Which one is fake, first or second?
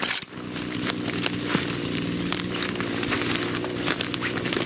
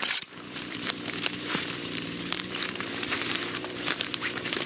second